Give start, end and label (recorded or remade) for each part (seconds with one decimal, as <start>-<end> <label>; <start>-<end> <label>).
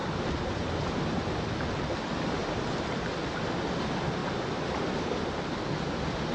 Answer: 0.0-6.3 recorded